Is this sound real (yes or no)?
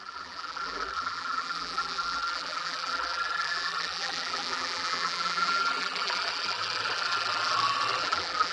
no